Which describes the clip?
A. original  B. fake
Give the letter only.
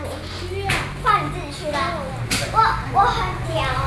A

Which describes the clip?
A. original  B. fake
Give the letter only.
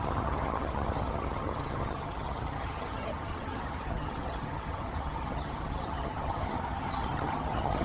B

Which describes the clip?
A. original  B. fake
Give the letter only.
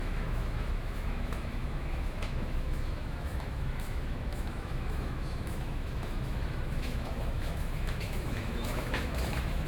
B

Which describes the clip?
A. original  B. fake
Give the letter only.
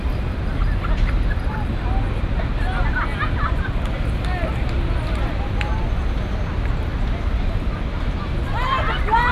A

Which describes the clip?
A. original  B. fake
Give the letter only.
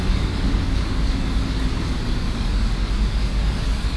B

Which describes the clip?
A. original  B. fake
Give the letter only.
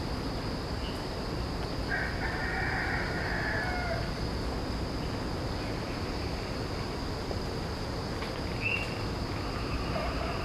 A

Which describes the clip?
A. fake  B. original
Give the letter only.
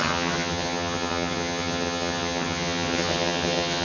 A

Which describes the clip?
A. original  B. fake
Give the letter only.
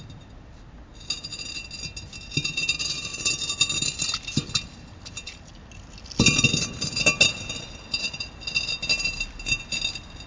A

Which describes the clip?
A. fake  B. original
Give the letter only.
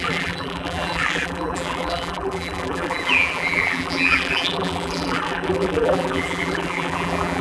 A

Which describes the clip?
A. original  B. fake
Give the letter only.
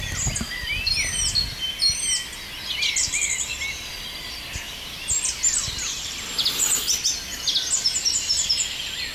A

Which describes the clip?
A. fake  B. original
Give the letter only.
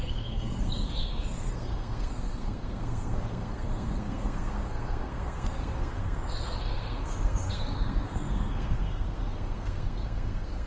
A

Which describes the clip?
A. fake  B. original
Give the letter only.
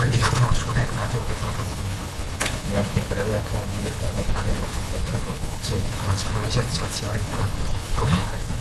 A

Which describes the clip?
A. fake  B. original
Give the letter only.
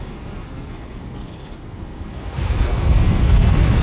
A